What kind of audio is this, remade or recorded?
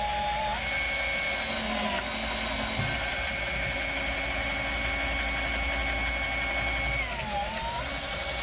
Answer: recorded